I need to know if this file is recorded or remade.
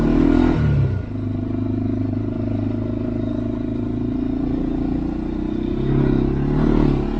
recorded